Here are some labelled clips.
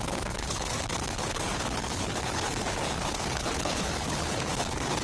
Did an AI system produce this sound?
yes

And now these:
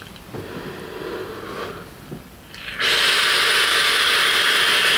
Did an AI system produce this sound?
no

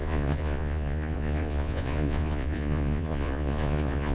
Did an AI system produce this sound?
yes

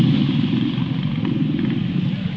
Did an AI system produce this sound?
no